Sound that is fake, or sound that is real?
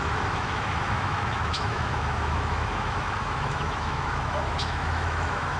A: fake